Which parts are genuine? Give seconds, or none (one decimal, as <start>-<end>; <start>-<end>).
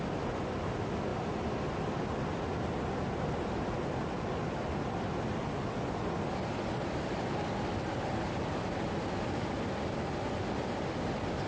0.0-11.5